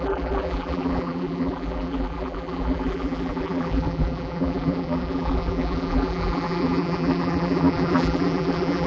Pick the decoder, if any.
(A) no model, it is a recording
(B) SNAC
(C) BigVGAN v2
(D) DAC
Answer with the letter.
C